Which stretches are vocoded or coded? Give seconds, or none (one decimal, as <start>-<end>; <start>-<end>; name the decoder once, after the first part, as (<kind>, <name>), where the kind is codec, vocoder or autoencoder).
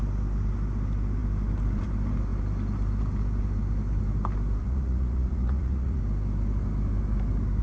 4.6-6.0 (vocoder, Vocos)